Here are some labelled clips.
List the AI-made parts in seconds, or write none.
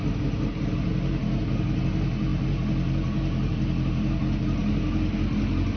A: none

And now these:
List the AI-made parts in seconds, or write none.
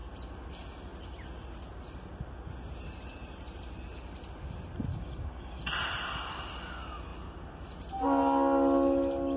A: 4.9-5.6 (codec, DAC)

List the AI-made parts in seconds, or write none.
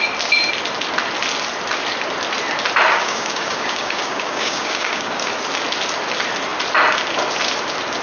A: 2.9-5.3 (codec, DAC)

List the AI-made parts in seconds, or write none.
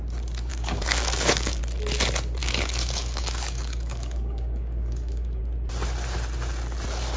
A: 0.5-1.6 (codec, DAC); 2.4-5.4